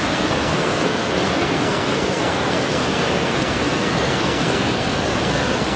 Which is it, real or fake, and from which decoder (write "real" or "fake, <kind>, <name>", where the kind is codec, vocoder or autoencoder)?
fake, codec, SNAC